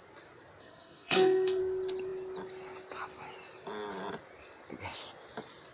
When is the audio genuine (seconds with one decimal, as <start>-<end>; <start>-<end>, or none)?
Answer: 0.0-0.6; 1.6-5.7